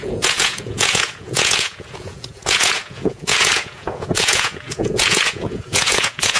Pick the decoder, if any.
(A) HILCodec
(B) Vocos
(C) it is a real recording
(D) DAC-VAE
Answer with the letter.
B